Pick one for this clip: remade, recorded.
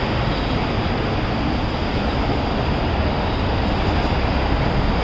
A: recorded